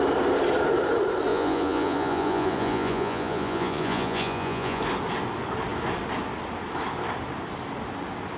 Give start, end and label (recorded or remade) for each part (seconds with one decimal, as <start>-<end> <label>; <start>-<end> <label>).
0.0-1.3 recorded; 1.3-4.8 remade; 4.8-8.4 recorded